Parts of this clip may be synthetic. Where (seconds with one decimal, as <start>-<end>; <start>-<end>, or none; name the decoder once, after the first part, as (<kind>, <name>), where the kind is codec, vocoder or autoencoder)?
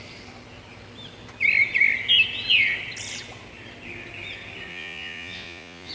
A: 4.7-5.9 (vocoder, Vocos)